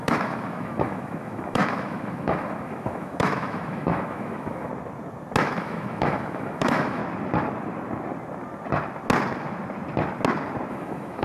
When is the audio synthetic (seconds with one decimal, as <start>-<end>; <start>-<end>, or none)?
0.0-4.7; 5.4-7.0; 10.7-11.2